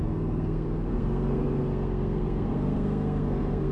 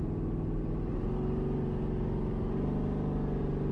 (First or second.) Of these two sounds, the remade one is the first